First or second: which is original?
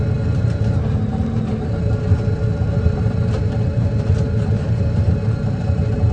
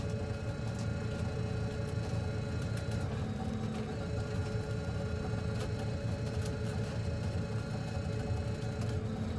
second